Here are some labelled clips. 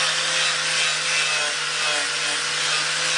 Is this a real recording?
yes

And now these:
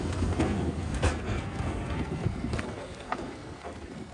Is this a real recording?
no